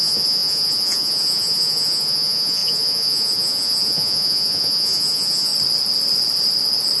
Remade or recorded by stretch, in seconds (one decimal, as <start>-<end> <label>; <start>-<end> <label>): 0.0-5.5 remade; 5.5-7.0 recorded